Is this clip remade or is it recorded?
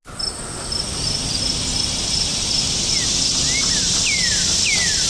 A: recorded